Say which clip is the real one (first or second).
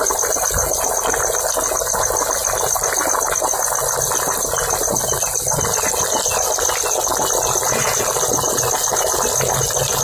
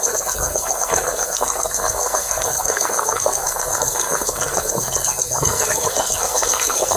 first